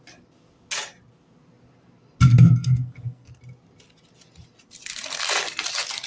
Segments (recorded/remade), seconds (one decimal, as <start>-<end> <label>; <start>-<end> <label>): 0.0-2.3 recorded; 2.3-3.4 remade; 3.4-6.1 recorded